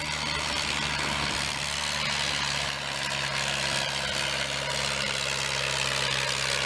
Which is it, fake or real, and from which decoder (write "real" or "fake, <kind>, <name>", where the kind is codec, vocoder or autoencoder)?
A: real